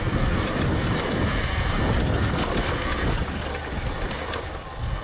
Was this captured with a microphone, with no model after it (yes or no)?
yes